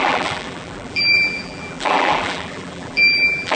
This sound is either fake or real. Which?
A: fake